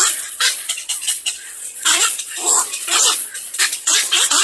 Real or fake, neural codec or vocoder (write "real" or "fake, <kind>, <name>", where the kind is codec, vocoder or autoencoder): fake, vocoder, Vocos